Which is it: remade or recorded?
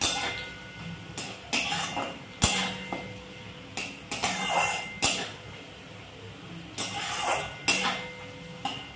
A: recorded